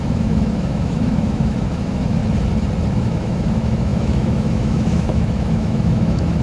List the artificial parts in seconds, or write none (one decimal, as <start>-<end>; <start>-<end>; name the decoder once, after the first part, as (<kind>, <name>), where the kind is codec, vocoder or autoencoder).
0.0-2.2 (autoencoder, DAC-VAE); 2.9-6.4